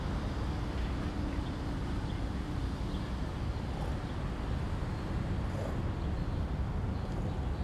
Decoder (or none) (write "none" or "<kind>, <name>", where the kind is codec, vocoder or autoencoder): none